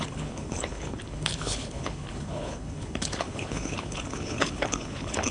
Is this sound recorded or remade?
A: remade